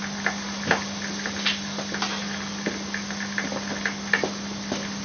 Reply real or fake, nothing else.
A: real